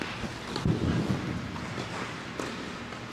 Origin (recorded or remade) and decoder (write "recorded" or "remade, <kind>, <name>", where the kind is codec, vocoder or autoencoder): recorded